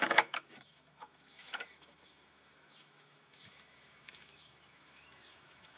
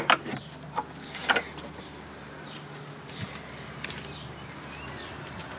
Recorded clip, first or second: second